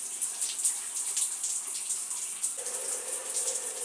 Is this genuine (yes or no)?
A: yes